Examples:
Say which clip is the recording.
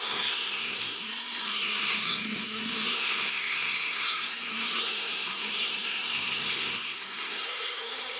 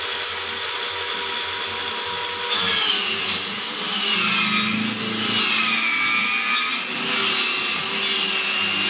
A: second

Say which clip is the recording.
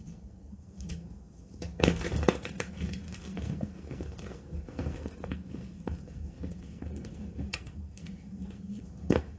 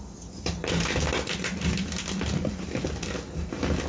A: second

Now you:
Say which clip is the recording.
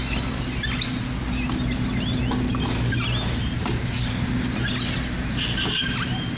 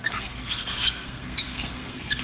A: first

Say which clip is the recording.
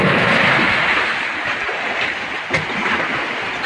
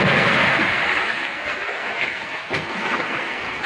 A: first